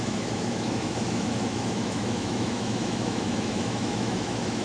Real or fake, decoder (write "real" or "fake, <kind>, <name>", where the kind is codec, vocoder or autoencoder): fake, autoencoder, DAC-VAE